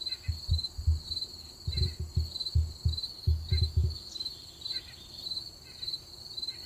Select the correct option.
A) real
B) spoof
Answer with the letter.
A